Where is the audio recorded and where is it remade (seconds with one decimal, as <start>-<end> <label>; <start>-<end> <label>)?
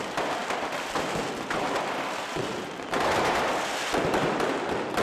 0.0-0.4 recorded; 0.4-3.4 remade; 3.4-5.0 recorded